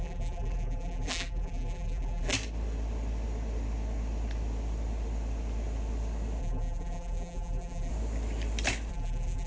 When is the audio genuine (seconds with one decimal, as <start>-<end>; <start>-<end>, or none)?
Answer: 2.3-6.4; 7.9-8.9